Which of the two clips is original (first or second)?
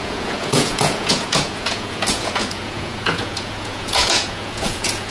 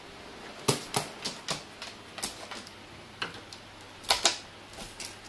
second